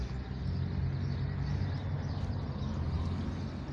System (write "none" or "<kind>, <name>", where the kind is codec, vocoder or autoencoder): none